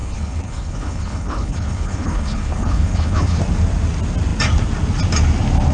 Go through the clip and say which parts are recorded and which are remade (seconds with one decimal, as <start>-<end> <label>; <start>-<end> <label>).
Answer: 0.0-3.4 remade; 3.4-5.7 recorded